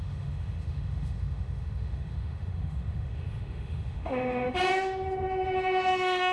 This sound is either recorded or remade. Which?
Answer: remade